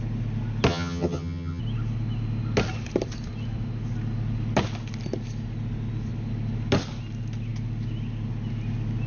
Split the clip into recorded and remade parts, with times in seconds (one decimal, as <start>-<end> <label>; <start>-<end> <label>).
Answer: 0.0-0.7 recorded; 0.7-1.6 remade; 1.6-9.1 recorded